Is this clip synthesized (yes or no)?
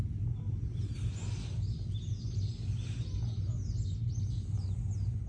no